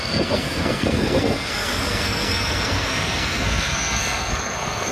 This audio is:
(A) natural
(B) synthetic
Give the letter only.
B